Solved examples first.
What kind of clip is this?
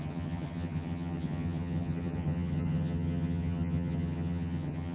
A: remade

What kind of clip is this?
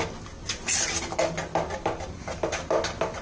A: recorded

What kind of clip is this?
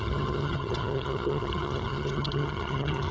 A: remade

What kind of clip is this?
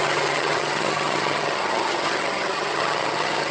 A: remade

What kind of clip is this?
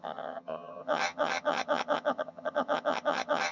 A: remade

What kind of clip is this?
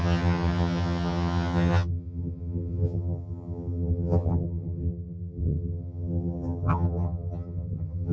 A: remade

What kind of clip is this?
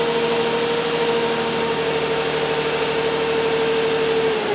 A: recorded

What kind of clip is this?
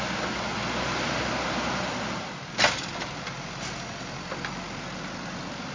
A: recorded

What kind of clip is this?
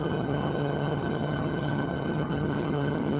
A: remade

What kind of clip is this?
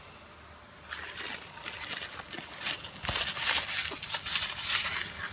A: recorded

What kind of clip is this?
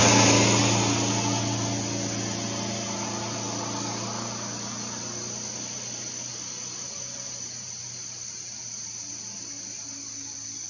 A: recorded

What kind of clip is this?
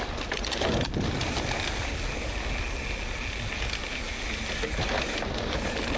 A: recorded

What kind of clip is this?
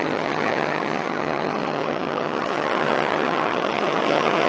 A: remade